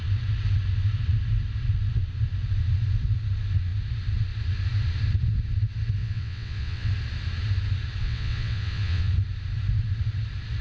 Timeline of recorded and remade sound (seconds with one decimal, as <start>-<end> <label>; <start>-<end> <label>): 0.0-6.0 recorded; 6.0-6.9 remade; 6.9-8.0 recorded; 8.0-9.1 remade; 9.1-10.6 recorded